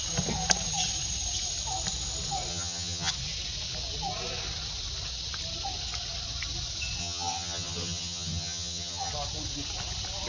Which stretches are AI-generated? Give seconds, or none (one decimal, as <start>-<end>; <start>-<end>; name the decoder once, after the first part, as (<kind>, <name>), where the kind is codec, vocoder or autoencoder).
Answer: 2.5-3.1 (vocoder, HiFi-GAN); 7.0-9.1